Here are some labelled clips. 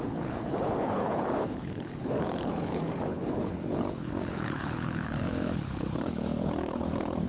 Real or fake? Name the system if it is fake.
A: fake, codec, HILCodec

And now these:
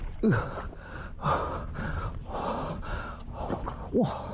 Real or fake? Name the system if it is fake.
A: real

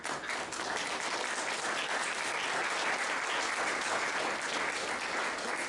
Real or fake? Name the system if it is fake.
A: real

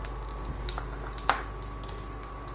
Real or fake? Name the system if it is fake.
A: real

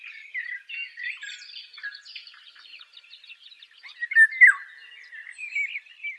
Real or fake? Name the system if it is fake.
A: real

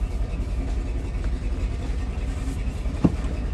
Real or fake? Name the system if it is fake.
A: real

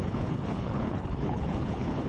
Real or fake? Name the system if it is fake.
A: fake, codec, HILCodec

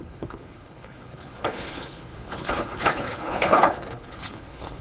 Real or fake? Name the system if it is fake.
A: fake, codec, HILCodec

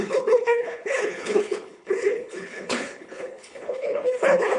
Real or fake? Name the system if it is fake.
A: fake, codec, HILCodec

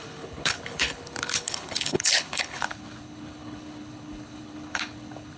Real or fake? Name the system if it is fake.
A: fake, codec, HILCodec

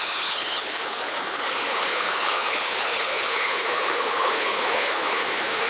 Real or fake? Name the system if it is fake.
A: fake, codec, HILCodec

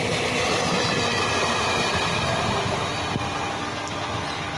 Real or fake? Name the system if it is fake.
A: real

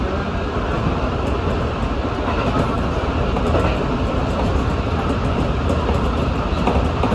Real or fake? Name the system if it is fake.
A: real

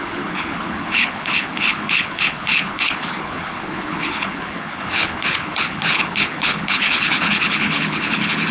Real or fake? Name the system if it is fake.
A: fake, codec, HILCodec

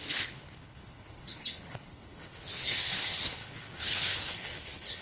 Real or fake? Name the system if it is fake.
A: fake, codec, HILCodec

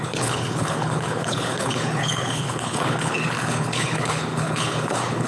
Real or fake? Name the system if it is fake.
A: fake, codec, HILCodec